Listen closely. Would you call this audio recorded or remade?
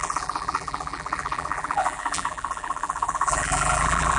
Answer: remade